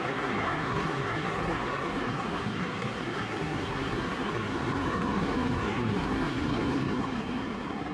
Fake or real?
fake